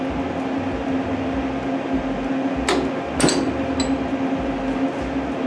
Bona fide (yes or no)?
yes